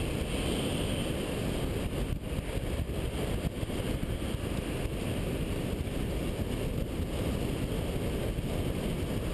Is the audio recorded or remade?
recorded